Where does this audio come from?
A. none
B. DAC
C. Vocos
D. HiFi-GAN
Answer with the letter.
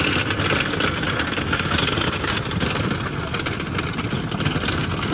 A